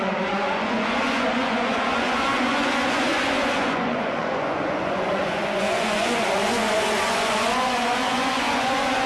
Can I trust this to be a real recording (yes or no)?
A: no